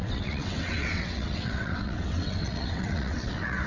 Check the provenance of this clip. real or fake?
fake